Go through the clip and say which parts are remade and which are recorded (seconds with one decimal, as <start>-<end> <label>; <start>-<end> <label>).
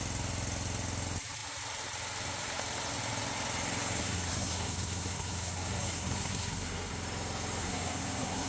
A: 0.0-4.0 recorded; 4.0-6.9 remade; 6.9-7.6 recorded; 7.6-8.5 remade